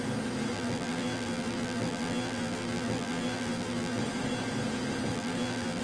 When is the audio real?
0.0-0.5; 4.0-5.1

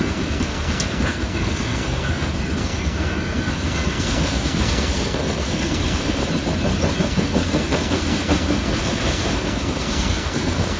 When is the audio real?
6.2-7.0

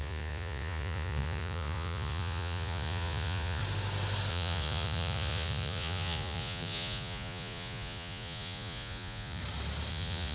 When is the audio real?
3.6-4.3; 9.4-9.9

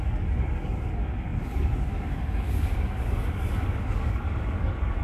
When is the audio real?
none

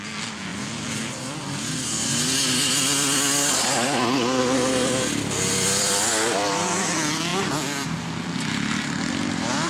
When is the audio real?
0.0-9.7

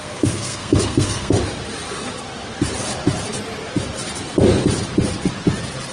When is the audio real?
1.3-5.9

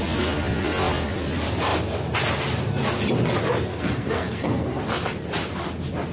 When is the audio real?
0.0-3.7; 4.8-6.1

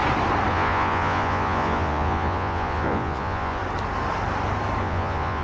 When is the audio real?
0.0-0.5; 3.6-4.8